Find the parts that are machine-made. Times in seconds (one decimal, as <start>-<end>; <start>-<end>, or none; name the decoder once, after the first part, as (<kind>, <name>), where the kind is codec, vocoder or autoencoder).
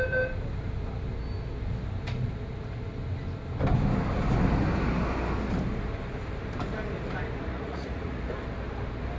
7.5-8.3 (vocoder, Vocos)